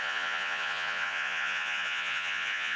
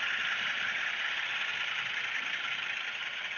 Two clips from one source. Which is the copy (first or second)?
first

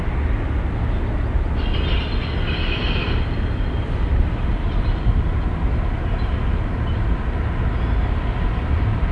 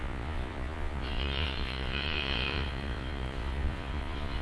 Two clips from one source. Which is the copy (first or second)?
second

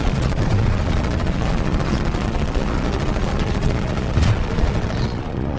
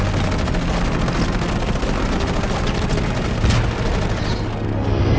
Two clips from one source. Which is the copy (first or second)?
first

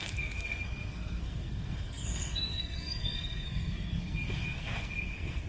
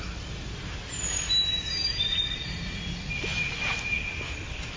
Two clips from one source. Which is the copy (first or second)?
first